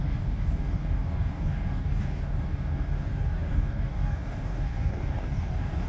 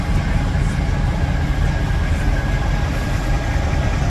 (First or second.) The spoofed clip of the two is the first